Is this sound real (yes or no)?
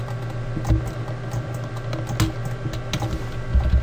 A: yes